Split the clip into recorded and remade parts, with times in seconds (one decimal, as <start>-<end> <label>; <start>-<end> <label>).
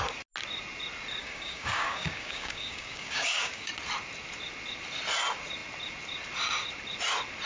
0.0-1.2 recorded; 1.2-3.7 remade; 3.7-7.5 recorded